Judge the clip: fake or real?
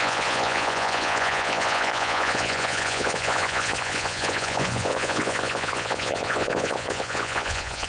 fake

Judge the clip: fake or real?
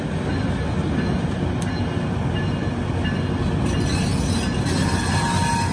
real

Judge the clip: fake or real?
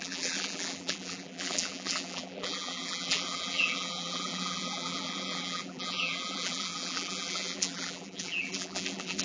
fake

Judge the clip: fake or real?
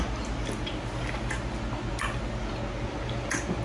real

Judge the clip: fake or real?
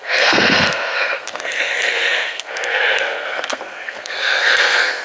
fake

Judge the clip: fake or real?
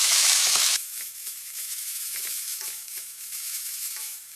fake